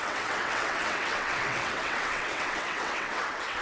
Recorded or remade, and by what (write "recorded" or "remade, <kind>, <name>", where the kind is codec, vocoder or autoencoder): remade, vocoder, WaveNeXt